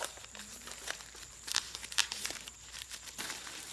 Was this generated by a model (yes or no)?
yes